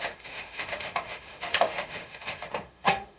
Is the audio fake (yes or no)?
yes